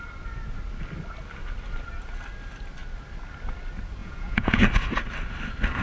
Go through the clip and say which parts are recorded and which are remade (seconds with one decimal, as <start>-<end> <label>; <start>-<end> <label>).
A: 0.0-4.0 recorded; 4.0-4.6 remade; 4.6-5.8 recorded